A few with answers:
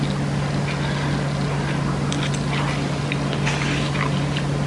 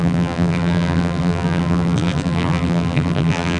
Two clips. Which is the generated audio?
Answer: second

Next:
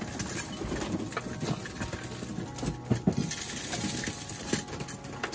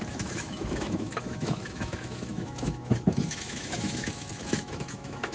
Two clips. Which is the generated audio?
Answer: second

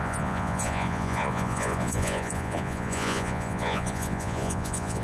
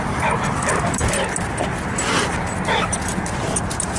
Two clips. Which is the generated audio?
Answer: first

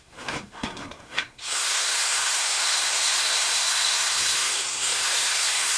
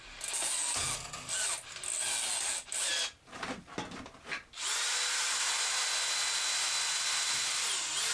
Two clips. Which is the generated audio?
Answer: first